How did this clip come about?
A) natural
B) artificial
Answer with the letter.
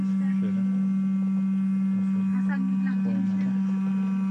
A